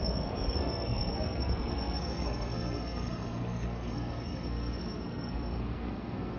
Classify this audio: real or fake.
fake